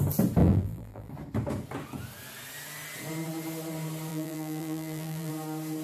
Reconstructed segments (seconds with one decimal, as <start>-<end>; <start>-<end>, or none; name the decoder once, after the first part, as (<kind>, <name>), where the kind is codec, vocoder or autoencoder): 0.4-1.1 (vocoder, BigVGAN v2); 4.1-5.3